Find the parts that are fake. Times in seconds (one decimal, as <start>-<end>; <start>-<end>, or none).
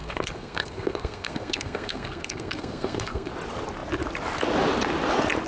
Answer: 0.0-3.3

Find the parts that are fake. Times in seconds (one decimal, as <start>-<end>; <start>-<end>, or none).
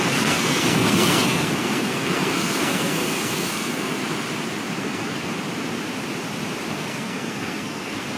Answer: 0.0-4.0; 4.8-5.3; 6.7-8.2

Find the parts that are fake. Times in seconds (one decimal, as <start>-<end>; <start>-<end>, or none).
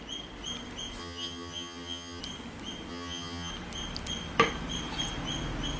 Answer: 1.0-2.2; 2.9-3.5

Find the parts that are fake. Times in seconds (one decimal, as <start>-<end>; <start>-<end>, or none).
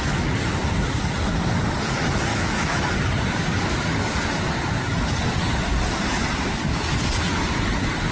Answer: 2.3-2.9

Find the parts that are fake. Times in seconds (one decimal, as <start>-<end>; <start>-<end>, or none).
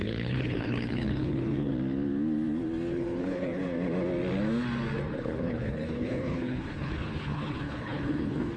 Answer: 0.0-1.7; 2.9-3.6; 5.2-8.6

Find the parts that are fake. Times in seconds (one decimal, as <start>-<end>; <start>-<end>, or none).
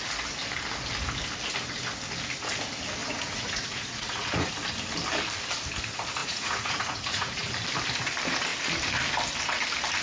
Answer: 3.0-4.5; 6.2-7.5